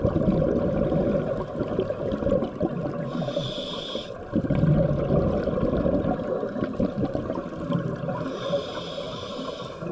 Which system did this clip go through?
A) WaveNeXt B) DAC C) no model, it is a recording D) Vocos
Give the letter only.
C